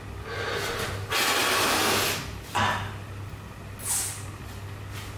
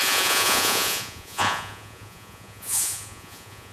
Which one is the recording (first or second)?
first